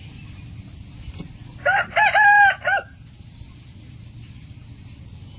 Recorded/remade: recorded